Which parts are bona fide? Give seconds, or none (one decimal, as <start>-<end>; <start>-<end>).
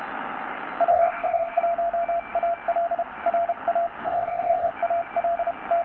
0.0-0.9; 1.6-4.0; 4.7-5.8